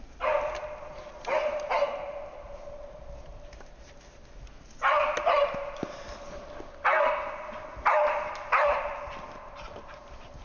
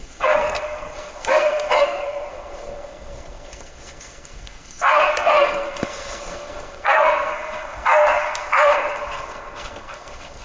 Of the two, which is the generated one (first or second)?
second